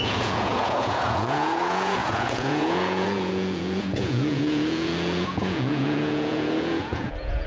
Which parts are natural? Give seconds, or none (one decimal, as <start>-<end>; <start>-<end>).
none